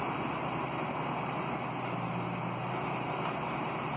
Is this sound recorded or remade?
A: recorded